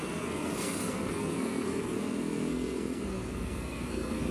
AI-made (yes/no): yes